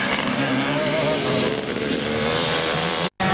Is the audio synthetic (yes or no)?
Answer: no